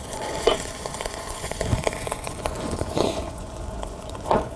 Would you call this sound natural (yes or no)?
no